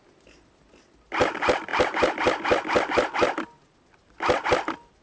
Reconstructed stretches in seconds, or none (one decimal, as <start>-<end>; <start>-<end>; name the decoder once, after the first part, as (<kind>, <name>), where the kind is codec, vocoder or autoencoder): none